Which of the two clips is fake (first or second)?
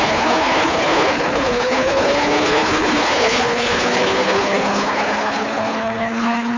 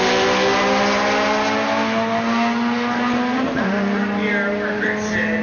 first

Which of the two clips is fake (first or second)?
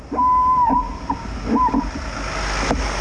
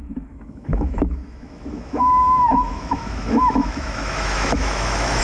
second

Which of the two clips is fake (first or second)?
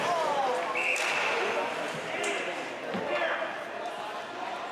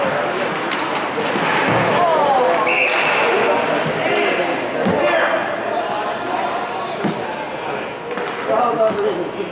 first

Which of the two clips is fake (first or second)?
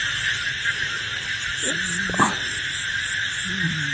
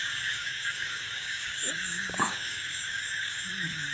second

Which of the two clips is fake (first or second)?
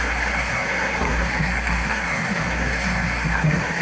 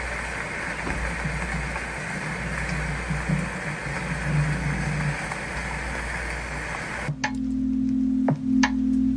first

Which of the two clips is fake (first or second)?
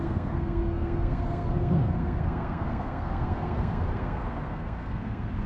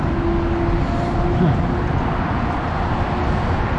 first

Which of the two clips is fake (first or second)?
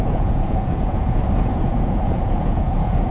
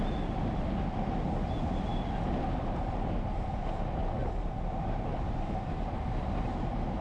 first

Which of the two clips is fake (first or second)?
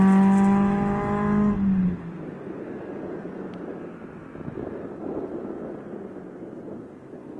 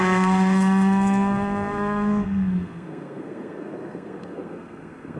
second